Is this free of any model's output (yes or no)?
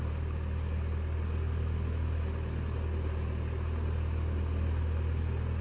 yes